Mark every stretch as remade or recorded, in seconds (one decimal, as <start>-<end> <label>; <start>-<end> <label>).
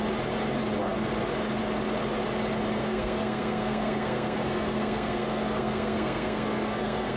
0.0-2.8 recorded; 2.8-7.2 remade